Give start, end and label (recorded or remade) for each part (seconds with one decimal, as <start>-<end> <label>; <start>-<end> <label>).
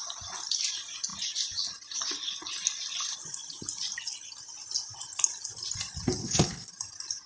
0.0-6.2 recorded; 6.2-6.7 remade; 6.7-7.3 recorded